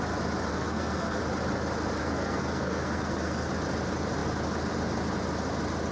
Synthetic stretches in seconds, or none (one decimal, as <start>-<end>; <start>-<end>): 0.5-1.2; 2.0-3.5